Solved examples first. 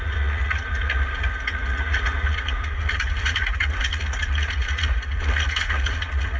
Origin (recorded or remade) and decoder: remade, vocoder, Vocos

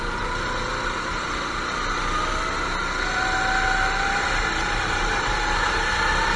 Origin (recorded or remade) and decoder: recorded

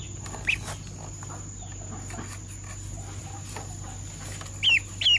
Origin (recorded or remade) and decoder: recorded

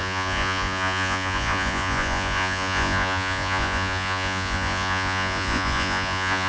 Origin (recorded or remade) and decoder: remade, vocoder, Vocos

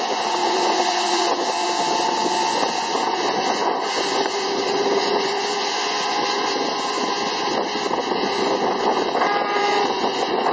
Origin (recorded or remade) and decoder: remade, vocoder, Vocos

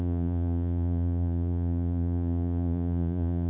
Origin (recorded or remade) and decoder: remade, vocoder, Vocos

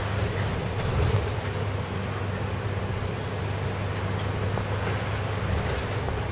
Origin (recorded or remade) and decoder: recorded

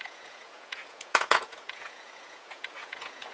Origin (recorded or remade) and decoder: remade, vocoder, Vocos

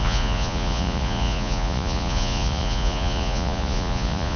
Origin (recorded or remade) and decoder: remade, vocoder, Vocos